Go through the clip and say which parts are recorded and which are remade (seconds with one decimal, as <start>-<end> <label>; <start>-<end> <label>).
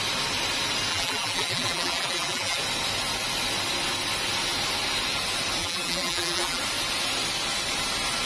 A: 0.0-0.9 recorded; 0.9-2.6 remade; 2.6-5.6 recorded; 5.6-6.6 remade; 6.6-8.3 recorded